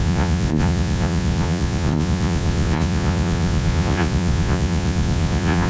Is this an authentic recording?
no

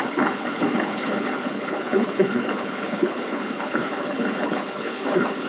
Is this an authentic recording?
no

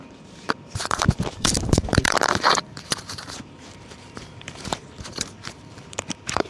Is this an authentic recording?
no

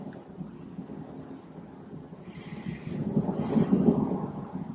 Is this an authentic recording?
yes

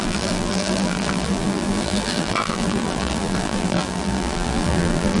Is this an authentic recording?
no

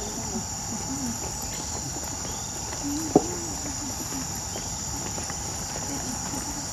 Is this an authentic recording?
yes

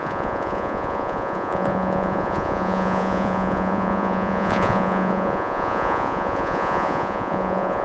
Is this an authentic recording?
no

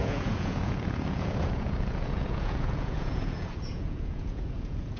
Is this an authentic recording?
no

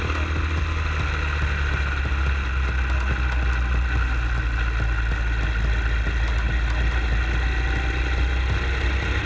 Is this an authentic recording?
yes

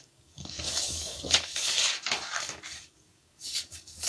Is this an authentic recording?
no